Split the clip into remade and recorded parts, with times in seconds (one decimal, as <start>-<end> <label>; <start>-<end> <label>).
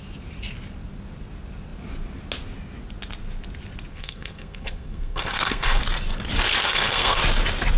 0.0-3.9 recorded; 3.9-5.8 remade; 5.8-6.6 recorded; 6.6-7.2 remade; 7.2-7.8 recorded